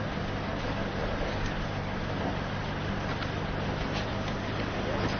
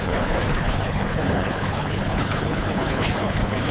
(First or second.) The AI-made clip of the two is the second